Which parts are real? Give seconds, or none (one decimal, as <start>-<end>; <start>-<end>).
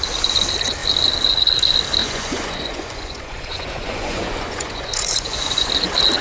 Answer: 0.0-2.0; 5.7-6.2